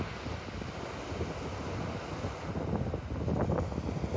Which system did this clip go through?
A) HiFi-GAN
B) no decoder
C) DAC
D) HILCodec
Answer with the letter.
B